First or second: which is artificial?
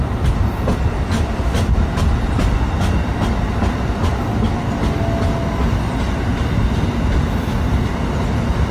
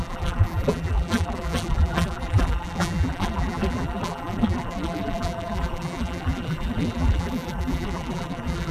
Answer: second